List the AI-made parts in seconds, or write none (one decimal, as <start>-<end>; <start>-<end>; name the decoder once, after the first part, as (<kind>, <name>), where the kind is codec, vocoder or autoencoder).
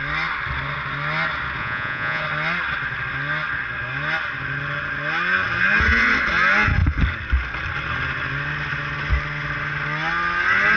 1.6-2.2 (vocoder, Vocos)